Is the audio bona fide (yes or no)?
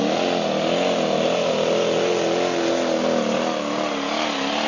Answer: yes